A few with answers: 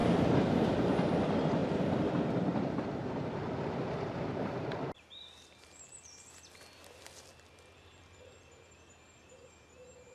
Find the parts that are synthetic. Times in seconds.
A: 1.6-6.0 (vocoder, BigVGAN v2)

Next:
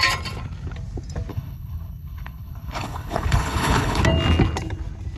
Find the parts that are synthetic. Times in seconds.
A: 1.3-4.0 (codec, HILCodec)

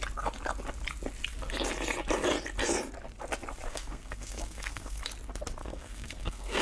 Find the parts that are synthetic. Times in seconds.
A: 3.7-5.0 (codec, SNAC); 5.6-6.6

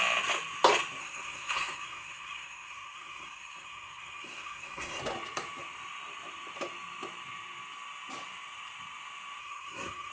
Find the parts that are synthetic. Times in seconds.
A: 1.0-5.0 (codec, SNAC); 9.4-10.1

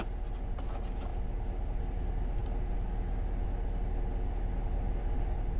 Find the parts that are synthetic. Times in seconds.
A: none

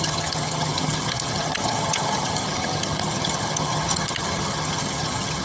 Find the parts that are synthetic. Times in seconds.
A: 0.0-5.4 (vocoder, HiFi-GAN)

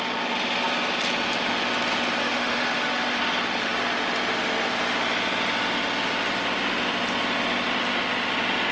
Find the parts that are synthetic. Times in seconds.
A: 2.2-3.2 (autoencoder, DAC-VAE)